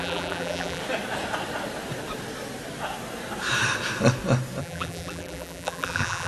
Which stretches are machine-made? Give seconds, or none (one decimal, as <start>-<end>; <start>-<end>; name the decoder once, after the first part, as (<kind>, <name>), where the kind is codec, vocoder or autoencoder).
0.0-0.8 (vocoder, BigVGAN v2); 4.6-6.3